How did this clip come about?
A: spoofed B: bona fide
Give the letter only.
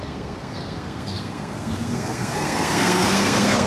A